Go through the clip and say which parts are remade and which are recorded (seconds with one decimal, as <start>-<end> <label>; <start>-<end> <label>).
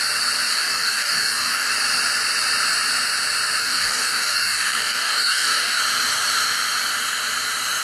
0.0-0.5 recorded; 0.5-1.7 remade; 1.7-3.6 recorded; 3.6-5.8 remade; 5.8-7.8 recorded